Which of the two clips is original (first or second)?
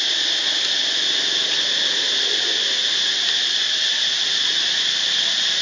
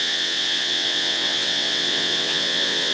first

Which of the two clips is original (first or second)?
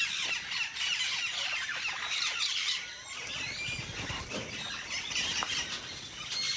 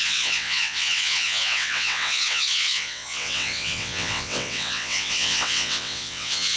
first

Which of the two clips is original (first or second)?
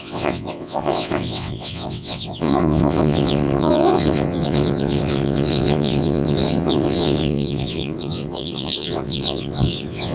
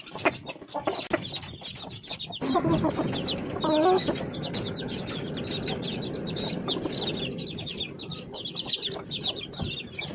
second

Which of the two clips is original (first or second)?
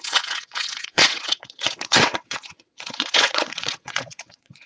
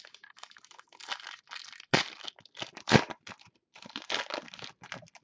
second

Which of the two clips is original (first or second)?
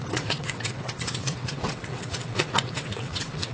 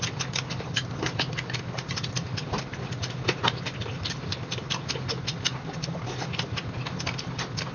second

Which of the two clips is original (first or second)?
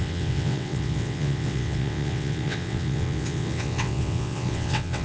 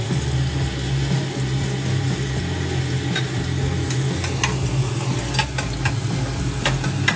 second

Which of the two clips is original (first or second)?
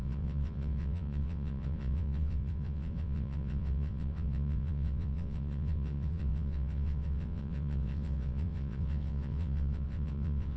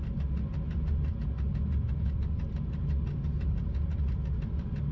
second